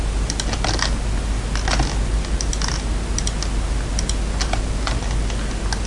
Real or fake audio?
real